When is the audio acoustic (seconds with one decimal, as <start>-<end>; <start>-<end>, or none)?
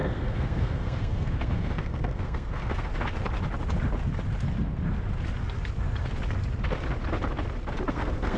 2.9-7.9